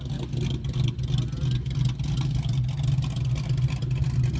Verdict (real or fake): real